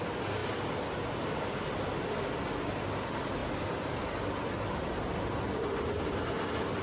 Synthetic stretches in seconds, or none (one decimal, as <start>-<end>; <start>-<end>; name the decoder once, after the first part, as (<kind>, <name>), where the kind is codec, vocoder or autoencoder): none